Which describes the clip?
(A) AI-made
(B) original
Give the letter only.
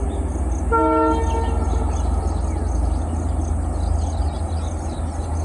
B